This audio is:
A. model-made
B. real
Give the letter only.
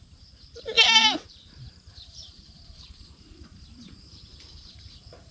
A